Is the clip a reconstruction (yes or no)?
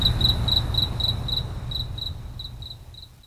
no